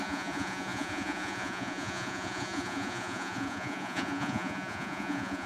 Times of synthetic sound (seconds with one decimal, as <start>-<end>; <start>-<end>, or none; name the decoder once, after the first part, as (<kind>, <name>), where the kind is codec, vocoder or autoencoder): 0.0-5.5 (vocoder, Vocos)